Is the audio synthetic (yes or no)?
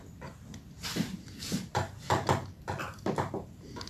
no